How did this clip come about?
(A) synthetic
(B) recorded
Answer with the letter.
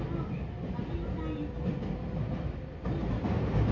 B